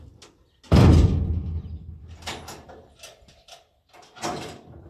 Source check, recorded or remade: recorded